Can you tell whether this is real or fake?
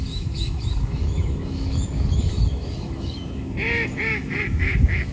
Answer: fake